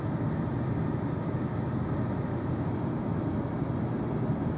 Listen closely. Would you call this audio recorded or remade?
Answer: recorded